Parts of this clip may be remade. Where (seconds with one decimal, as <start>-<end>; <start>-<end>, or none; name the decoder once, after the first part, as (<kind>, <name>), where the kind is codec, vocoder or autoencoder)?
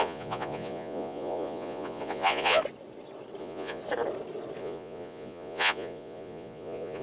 0.0-2.6 (vocoder, Vocos); 3.4-3.8; 4.6-7.0